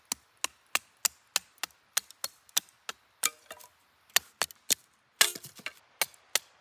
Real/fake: real